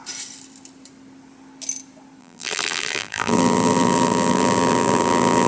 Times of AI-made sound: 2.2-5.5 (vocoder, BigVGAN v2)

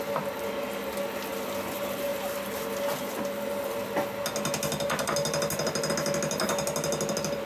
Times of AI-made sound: none

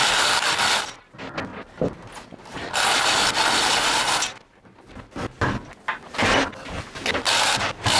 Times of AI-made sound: 0.0-1.0 (vocoder, BigVGAN v2); 1.5-4.6

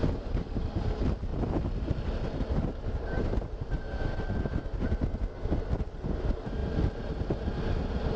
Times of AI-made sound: 6.6-7.1 (vocoder, BigVGAN v2)

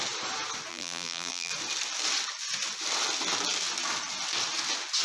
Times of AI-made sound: 0.7-1.5 (vocoder, BigVGAN v2)